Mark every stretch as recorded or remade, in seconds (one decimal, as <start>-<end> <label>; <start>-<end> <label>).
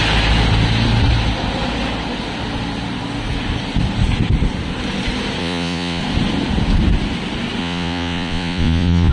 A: 0.0-5.4 recorded; 5.4-6.0 remade; 6.0-7.6 recorded; 7.6-9.1 remade